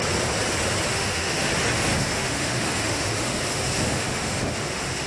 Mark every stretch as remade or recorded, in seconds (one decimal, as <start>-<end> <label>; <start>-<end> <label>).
0.0-0.9 recorded; 0.9-1.5 remade; 1.5-1.9 recorded; 1.9-5.1 remade